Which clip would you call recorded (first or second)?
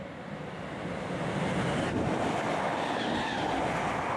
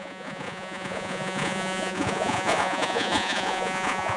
first